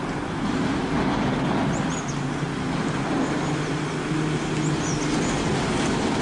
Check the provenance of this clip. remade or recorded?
recorded